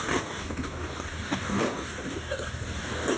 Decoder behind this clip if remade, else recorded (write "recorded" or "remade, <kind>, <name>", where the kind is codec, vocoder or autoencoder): remade, codec, DAC